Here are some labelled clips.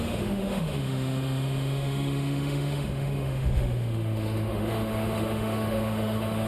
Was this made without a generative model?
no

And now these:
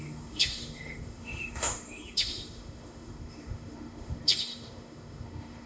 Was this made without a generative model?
no